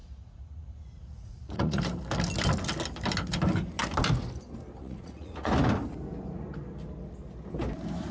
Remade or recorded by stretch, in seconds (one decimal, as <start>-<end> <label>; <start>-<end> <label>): 0.0-1.8 remade; 1.8-4.8 recorded; 4.8-5.5 remade; 5.5-8.1 recorded